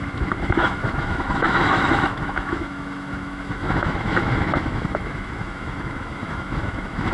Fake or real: fake